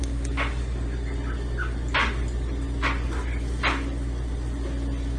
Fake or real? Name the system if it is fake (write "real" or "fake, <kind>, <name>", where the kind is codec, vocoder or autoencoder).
real